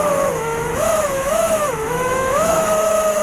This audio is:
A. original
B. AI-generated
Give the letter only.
B